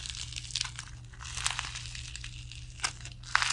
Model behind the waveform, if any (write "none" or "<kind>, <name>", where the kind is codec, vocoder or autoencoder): none